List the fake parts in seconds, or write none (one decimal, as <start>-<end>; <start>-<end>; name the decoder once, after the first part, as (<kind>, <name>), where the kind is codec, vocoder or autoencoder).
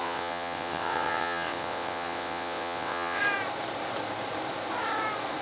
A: 0.0-3.2 (vocoder, WaveNeXt)